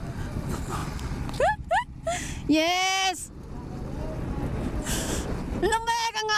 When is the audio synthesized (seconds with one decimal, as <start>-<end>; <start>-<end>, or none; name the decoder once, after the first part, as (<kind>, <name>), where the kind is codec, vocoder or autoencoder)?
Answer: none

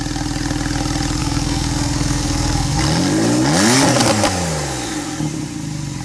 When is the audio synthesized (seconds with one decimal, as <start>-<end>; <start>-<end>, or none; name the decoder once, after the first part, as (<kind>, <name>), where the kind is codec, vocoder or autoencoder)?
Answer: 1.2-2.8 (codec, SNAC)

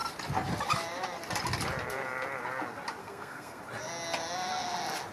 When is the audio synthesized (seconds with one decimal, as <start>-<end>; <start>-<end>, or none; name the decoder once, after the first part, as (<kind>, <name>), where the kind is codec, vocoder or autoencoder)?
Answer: 3.0-3.6 (codec, SNAC)

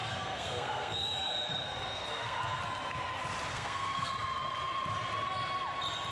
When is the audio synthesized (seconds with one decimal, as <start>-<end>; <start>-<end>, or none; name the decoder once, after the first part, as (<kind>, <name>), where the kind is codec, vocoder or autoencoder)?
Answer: 0.0-2.6 (codec, SNAC); 3.5-4.1

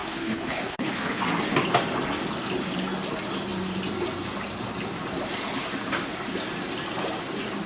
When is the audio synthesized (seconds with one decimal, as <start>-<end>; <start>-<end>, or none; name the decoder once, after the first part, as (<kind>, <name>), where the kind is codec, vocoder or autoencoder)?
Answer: 0.0-1.2 (codec, HILCodec)

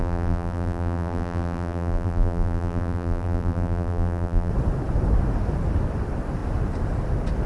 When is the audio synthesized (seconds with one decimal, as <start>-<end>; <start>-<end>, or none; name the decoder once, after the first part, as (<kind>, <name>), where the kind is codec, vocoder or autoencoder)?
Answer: 0.0-4.5 (vocoder, BigVGAN v2)